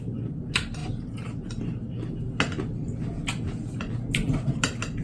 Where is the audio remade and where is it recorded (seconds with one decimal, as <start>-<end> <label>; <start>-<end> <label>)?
0.0-5.0 recorded